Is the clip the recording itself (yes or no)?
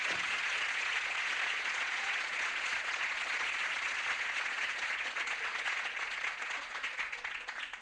no